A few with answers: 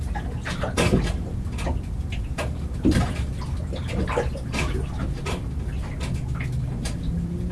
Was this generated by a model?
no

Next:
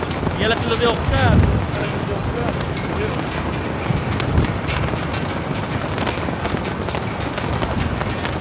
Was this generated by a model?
no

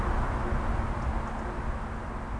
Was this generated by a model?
no